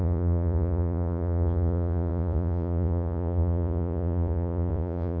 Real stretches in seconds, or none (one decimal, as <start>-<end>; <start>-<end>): none